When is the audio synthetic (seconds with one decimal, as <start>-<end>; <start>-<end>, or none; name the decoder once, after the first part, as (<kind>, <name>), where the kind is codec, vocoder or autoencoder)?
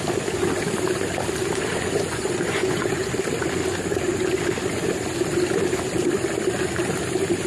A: 1.7-3.1 (vocoder, Vocos)